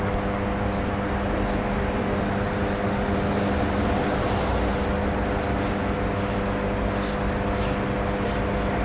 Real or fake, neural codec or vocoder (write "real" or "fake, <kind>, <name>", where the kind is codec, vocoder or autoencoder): real